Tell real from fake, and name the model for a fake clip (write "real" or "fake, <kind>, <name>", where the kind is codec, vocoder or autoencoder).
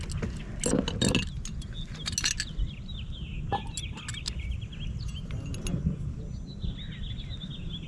real